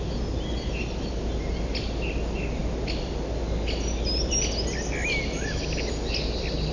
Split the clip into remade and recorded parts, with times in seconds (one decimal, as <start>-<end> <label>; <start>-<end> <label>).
0.0-6.7 recorded